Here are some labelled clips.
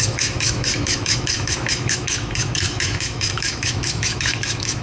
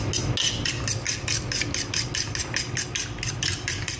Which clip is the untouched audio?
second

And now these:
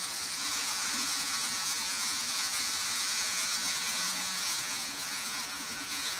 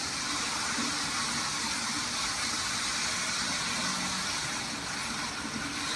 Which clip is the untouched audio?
second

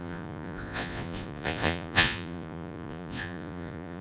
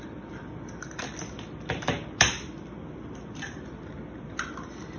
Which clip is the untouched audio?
second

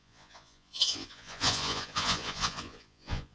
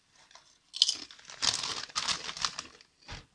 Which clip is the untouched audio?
second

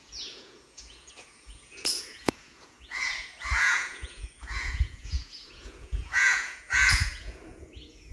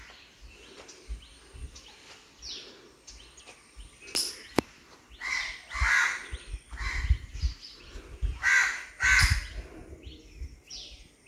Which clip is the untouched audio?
second